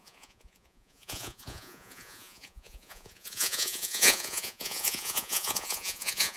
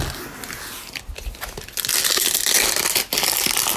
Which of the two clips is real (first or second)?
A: second